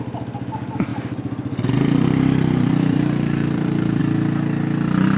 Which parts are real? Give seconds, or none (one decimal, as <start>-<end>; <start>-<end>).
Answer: 0.0-0.9; 4.0-5.2